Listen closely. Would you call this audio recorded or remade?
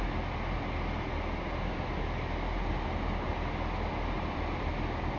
recorded